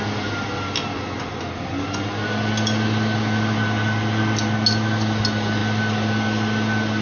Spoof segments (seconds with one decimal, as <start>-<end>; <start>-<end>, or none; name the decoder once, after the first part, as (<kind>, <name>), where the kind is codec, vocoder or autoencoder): none